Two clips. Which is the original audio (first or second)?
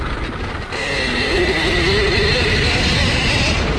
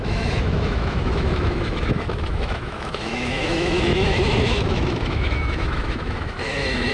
first